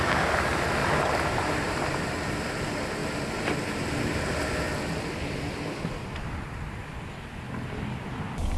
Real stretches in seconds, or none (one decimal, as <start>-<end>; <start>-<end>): 0.0-0.8; 1.8-8.6